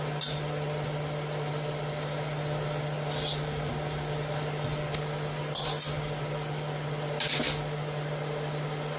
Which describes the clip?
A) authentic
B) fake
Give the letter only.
A